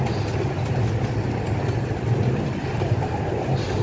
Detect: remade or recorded recorded